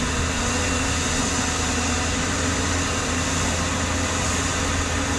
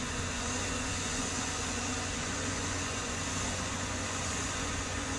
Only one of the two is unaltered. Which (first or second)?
first